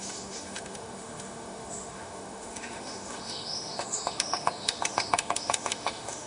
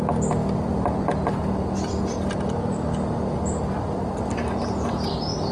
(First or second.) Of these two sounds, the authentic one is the second